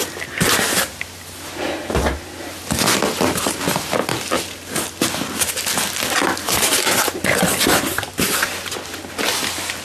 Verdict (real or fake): real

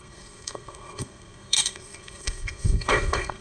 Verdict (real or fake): fake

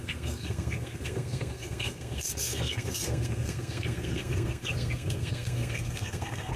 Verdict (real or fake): fake